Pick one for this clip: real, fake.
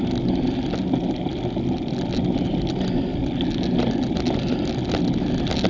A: real